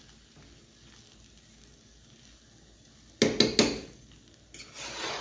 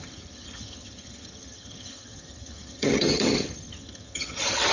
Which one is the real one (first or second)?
first